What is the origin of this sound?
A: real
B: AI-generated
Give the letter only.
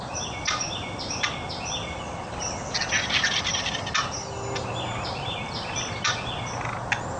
A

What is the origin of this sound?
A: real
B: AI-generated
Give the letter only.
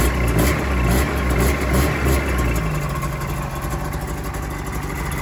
A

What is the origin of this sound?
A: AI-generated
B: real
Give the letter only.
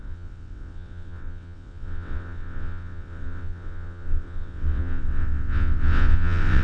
A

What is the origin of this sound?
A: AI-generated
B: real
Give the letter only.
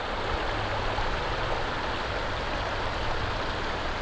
B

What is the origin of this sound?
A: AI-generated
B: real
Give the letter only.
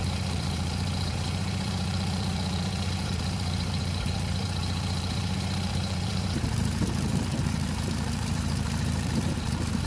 A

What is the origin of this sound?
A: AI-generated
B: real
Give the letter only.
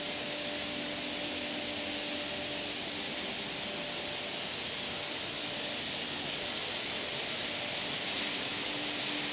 B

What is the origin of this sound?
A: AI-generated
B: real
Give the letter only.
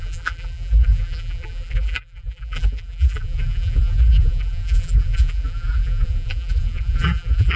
A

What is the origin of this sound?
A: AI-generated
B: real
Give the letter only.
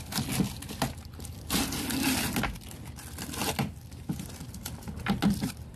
B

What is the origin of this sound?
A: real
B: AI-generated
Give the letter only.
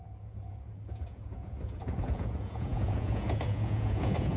B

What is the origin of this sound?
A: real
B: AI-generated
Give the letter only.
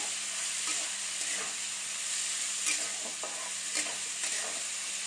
A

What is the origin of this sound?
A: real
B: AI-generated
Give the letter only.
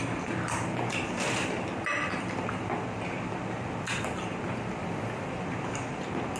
A